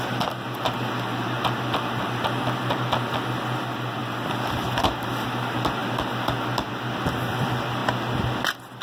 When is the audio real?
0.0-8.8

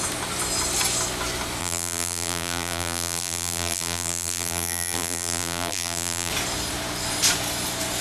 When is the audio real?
0.0-1.6; 6.3-8.0

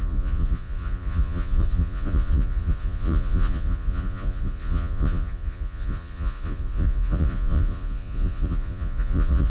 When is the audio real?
none